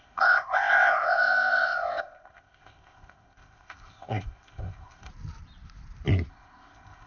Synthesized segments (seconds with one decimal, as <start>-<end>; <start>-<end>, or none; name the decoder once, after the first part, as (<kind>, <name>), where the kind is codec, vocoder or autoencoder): 0.0-5.1 (codec, ZipCodec); 6.3-7.1